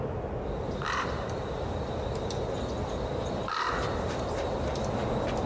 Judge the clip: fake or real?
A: real